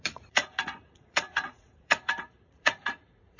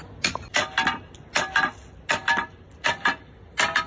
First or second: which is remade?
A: first